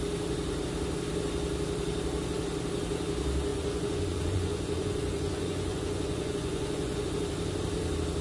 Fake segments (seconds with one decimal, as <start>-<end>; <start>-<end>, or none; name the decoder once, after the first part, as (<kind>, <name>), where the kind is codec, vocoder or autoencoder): 3.5-7.1 (vocoder, Vocos)